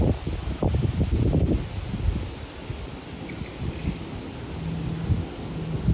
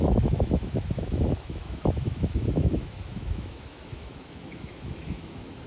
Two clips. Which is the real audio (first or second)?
first